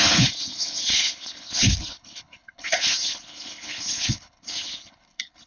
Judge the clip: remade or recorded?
remade